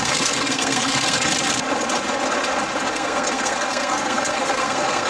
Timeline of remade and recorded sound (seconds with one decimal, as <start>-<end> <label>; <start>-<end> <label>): 0.0-1.3 remade; 1.3-2.9 recorded; 2.9-5.1 remade